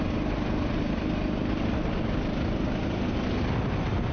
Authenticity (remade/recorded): recorded